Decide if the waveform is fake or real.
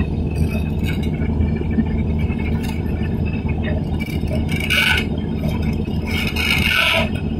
real